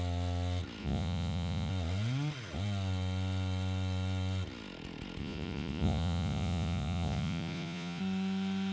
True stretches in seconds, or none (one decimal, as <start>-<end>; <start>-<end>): 0.0-0.8; 1.7-5.2; 8.0-8.7